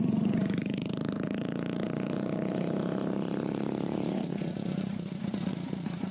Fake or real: fake